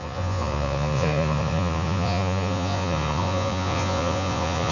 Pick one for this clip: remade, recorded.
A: remade